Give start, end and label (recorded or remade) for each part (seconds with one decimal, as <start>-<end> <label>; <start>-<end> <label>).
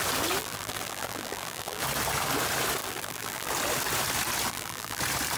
0.0-0.4 recorded; 0.4-1.8 remade; 1.8-2.8 recorded; 2.8-3.5 remade; 3.5-4.5 recorded; 4.5-5.0 remade; 5.0-5.4 recorded